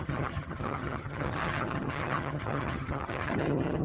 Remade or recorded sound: remade